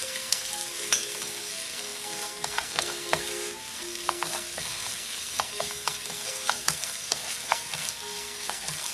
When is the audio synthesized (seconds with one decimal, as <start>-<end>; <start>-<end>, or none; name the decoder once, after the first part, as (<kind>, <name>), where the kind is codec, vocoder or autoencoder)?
0.0-8.9 (codec, SNAC)